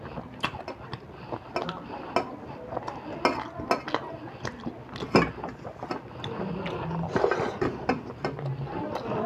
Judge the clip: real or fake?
real